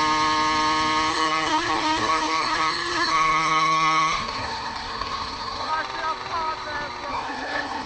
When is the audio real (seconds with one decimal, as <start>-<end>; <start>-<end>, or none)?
0.0-1.1; 5.7-7.1